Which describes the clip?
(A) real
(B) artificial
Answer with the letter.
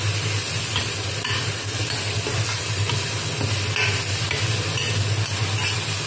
A